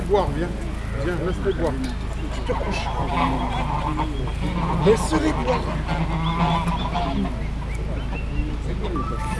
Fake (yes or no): no